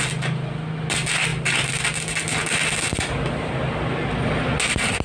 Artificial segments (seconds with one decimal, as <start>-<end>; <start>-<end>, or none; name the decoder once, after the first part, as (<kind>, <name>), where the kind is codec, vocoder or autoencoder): none